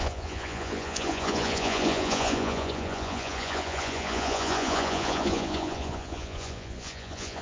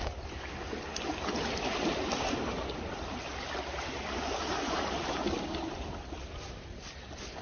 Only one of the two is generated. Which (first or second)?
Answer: first